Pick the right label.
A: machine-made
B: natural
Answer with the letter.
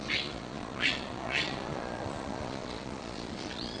A